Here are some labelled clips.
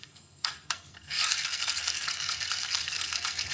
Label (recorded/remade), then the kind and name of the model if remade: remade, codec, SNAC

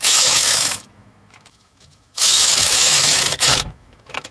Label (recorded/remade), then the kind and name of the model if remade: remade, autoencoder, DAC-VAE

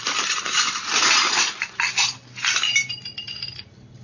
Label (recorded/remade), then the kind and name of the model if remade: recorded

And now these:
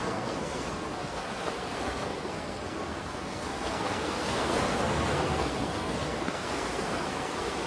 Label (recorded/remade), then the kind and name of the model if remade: remade, codec, SNAC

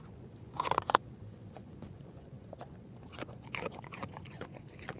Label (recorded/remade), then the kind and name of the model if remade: remade, vocoder, Vocos